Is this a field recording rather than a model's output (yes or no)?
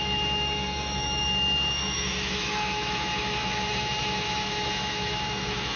no